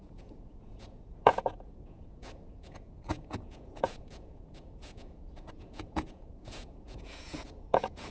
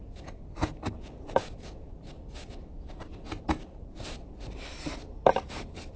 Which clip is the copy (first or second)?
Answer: first